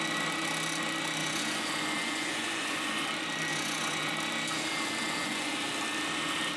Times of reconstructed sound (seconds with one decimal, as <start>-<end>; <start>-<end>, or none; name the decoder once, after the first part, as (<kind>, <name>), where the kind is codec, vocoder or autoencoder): 1.2-3.0 (vocoder, Vocos); 3.5-4.1; 5.0-5.6